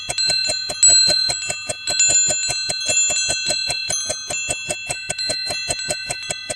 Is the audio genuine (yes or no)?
yes